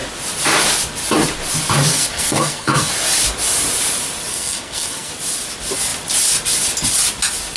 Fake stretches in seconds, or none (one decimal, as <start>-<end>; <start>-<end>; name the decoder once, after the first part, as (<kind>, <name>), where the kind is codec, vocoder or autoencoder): 1.9-2.9 (codec, SNAC); 4.3-5.1